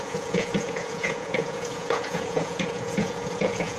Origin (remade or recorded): remade